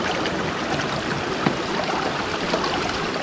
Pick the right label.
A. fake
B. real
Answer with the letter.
B